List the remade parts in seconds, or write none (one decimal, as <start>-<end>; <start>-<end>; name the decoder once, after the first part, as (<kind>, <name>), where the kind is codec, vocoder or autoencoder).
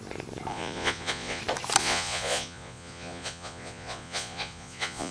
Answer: 0.5-1.4 (vocoder, Vocos); 1.8-5.1